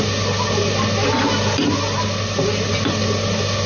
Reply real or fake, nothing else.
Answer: real